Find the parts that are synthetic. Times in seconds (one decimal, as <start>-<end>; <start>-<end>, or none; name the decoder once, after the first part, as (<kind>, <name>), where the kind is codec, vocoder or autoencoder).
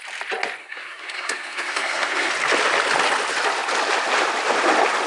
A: 0.6-2.3 (codec, SNAC)